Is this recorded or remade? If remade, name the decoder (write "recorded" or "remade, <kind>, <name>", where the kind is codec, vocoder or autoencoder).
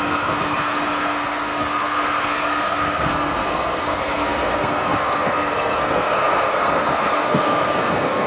remade, codec, SNAC